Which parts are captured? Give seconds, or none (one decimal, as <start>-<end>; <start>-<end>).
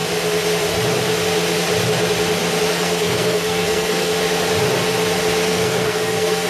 0.0-2.7; 4.1-5.5